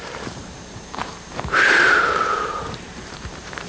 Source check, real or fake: fake